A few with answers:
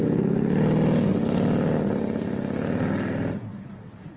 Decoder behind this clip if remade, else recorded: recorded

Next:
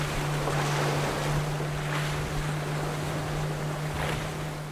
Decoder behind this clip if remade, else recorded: recorded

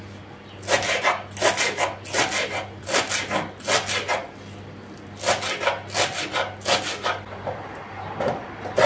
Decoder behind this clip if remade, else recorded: recorded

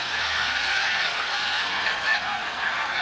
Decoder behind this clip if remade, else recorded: remade, codec, SNAC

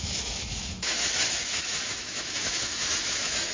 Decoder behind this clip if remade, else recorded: remade, autoencoder, DAC-VAE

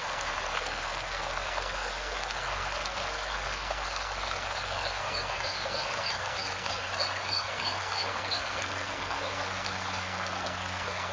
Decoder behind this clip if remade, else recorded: remade, codec, SNAC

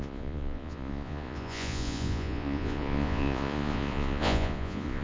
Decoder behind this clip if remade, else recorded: remade, vocoder, Vocos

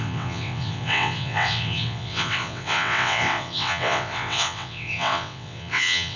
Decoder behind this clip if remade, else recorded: remade, vocoder, WaveNeXt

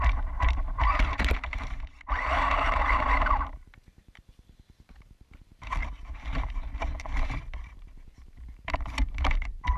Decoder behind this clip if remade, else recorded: remade, vocoder, BigVGAN v2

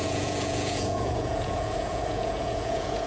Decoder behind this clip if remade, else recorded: remade, vocoder, Vocos